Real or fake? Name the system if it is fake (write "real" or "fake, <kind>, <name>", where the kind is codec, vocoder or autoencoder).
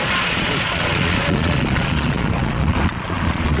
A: fake, vocoder, Vocos